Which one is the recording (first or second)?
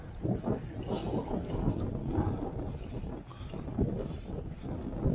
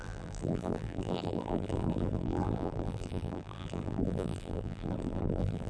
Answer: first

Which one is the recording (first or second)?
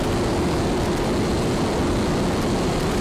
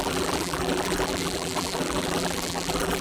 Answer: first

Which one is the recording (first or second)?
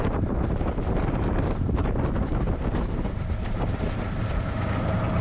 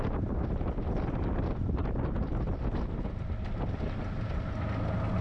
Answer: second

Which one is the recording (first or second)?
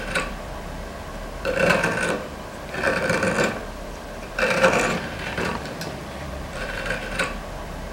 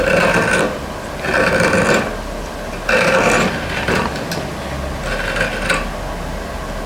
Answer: second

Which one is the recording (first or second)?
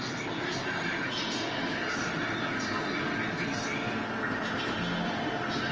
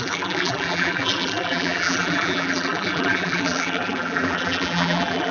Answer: first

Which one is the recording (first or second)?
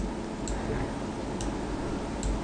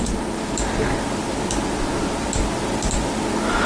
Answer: first